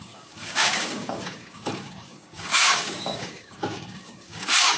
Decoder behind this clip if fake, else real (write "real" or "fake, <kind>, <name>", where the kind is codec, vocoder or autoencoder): fake, codec, DAC